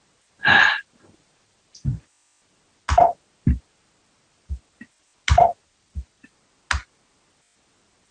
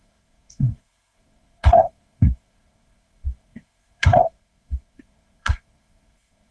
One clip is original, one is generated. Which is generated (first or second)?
second